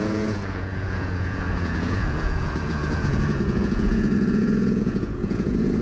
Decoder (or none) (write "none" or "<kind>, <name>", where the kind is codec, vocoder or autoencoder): vocoder, Vocos